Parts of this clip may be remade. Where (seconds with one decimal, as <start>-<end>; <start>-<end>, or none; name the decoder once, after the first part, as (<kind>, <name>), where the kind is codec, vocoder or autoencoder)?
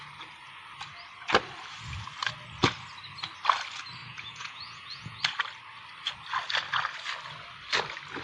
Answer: 4.0-5.2 (vocoder, Vocos)